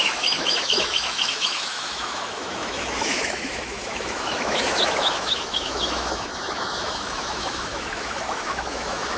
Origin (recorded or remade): remade